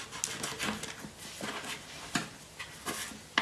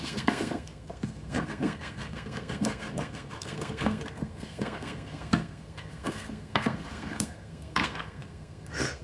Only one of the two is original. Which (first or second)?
first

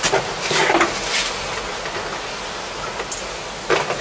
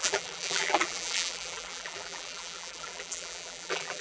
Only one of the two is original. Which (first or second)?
first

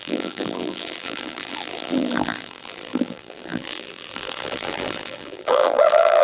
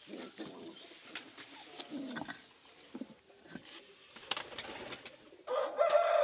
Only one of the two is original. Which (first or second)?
second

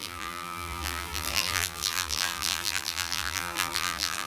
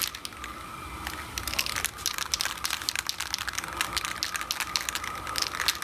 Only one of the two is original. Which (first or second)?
second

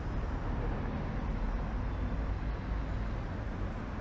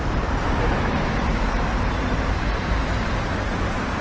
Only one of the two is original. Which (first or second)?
first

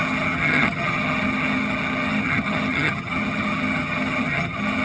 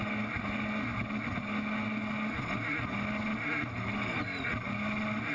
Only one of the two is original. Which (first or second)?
second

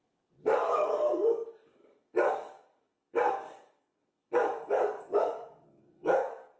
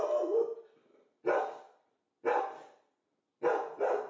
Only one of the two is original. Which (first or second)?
second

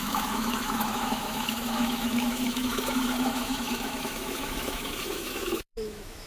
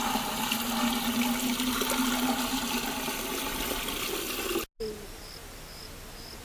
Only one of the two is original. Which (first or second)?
second